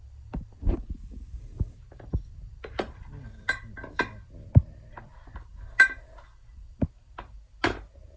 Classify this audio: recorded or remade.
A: recorded